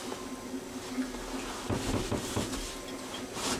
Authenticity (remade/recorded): recorded